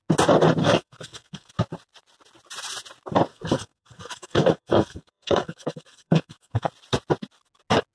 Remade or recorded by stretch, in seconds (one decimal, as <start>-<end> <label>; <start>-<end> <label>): 0.0-0.6 recorded; 0.6-1.5 remade; 1.5-3.3 recorded; 3.3-6.7 remade; 6.7-7.9 recorded